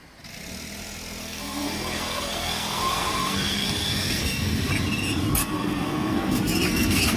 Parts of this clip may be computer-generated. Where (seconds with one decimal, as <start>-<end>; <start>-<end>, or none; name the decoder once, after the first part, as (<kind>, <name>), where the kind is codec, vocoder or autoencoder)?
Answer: 1.2-4.7 (codec, SNAC); 5.4-7.2